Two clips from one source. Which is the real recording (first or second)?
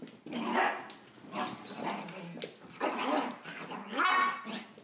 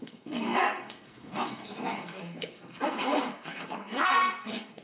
first